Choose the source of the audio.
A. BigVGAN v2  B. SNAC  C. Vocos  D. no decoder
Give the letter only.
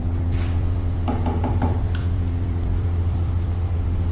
A